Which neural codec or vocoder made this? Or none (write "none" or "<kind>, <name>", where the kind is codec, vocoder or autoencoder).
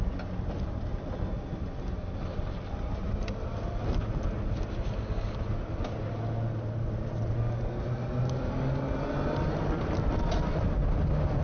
none